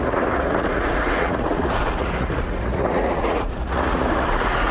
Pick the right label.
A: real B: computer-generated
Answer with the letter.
B